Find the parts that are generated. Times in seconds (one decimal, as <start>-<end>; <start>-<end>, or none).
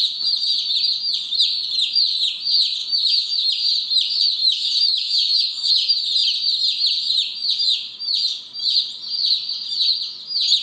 2.8-3.5; 4.4-5.7